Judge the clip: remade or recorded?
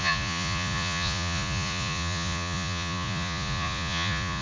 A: remade